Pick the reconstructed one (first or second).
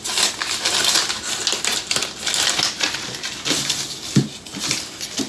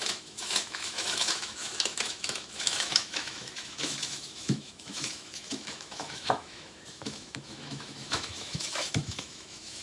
second